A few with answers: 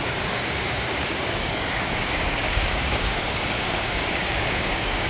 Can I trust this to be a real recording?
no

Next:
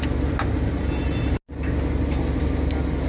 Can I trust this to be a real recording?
yes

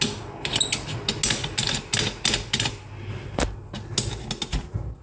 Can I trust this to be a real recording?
yes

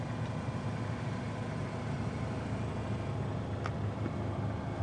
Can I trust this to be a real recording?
yes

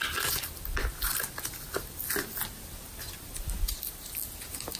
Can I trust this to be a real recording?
yes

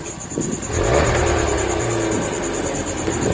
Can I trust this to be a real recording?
yes